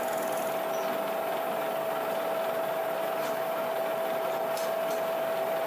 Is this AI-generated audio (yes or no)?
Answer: no